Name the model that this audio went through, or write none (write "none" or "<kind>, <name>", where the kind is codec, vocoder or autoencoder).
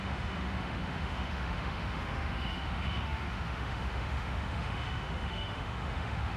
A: autoencoder, DAC-VAE